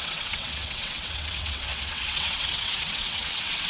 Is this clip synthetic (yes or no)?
yes